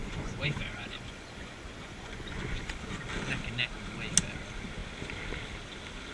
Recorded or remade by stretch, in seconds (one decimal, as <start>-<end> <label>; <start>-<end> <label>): 0.0-3.0 remade; 3.0-6.1 recorded